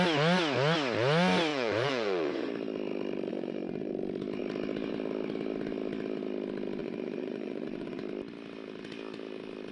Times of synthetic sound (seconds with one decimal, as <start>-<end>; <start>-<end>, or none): 1.5-2.5; 3.3-3.9; 6.8-8.0